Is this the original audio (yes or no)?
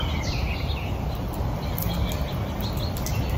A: no